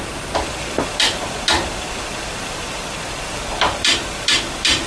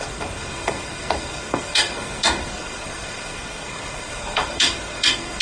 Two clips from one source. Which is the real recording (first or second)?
first